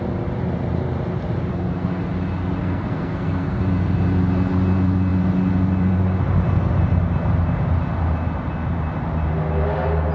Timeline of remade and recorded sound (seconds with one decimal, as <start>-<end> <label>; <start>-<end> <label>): 0.0-1.5 recorded; 1.5-2.0 remade; 2.0-2.6 recorded; 2.6-3.6 remade; 3.6-10.1 recorded